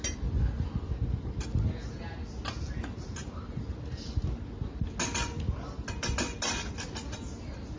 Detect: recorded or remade recorded